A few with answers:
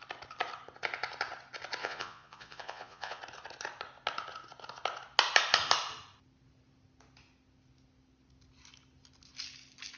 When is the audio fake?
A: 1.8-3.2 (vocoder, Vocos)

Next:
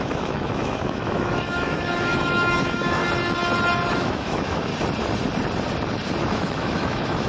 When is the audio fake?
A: 0.0-3.0 (autoencoder, DAC-VAE); 3.9-4.7; 6.2-7.3

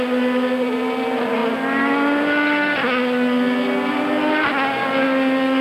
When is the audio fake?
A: none

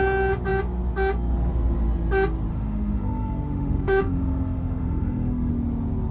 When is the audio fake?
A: 2.5-5.5 (autoencoder, DAC-VAE)

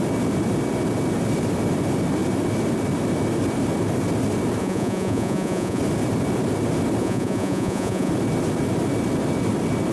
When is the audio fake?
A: 4.6-5.8 (vocoder, Vocos); 7.0-8.1

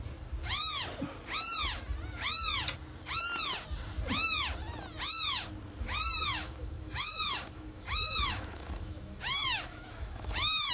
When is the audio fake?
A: 6.2-10.7 (autoencoder, DAC-VAE)